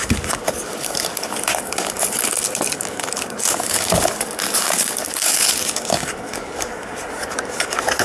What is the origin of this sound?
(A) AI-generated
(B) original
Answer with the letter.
A